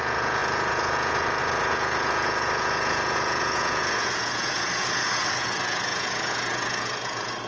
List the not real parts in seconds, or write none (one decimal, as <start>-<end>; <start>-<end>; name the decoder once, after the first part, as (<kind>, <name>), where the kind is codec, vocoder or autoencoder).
0.0-7.5 (vocoder, Vocos)